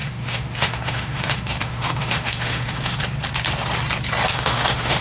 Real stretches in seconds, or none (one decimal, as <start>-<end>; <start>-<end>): 3.0-4.3